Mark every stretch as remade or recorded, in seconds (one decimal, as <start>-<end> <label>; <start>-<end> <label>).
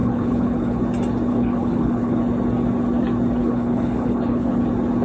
0.0-0.8 remade; 0.8-1.3 recorded; 1.3-2.2 remade; 2.2-3.4 recorded; 3.4-4.6 remade; 4.6-5.0 recorded